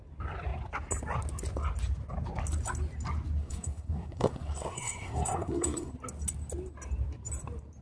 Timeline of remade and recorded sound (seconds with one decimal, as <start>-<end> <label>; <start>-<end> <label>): 0.0-3.4 recorded; 3.4-5.9 remade; 5.9-7.8 recorded